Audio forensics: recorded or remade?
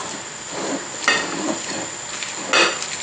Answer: recorded